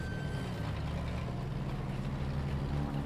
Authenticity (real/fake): real